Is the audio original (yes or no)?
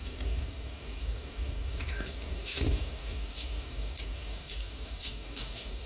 no